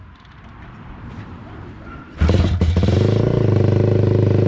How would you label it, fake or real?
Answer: fake